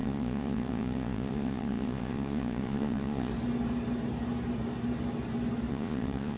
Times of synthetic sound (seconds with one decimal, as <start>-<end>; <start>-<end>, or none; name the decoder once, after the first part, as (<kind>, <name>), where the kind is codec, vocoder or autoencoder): 0.0-3.3 (vocoder, Vocos); 5.7-6.4